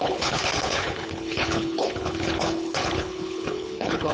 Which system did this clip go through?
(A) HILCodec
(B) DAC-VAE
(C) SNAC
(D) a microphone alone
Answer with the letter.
A